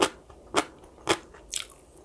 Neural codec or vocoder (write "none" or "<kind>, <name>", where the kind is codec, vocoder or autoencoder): none